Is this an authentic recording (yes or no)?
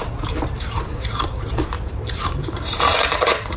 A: no